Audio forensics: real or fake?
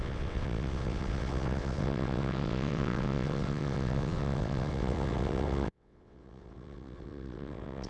fake